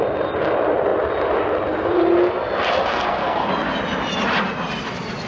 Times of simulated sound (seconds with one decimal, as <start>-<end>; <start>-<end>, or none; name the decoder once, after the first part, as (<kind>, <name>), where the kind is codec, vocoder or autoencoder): 2.9-3.5 (codec, SNAC)